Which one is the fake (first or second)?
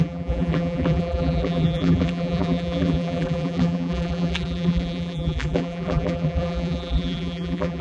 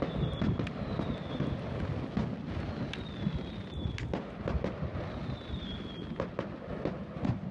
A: first